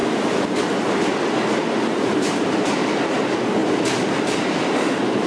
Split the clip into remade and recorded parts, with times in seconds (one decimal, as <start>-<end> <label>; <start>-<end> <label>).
0.0-5.3 recorded